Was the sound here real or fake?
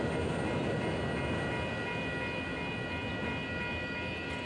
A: real